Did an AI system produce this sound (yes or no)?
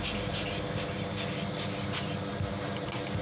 no